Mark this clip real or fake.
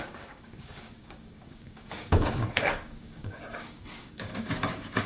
fake